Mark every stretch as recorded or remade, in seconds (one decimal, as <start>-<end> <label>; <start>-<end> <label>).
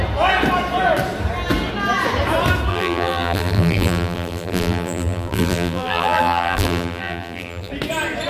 0.0-2.7 recorded; 2.7-7.7 remade; 7.7-8.3 recorded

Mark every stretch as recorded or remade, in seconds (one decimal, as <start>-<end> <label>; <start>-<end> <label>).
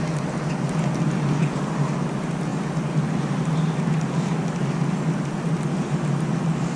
0.0-6.8 recorded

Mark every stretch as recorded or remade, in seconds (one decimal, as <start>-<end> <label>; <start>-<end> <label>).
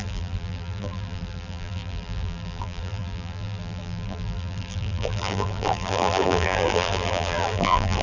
0.0-8.0 remade